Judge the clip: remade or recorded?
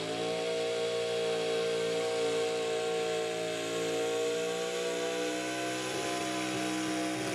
recorded